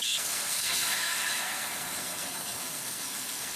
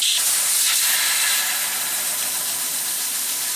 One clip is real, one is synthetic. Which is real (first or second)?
second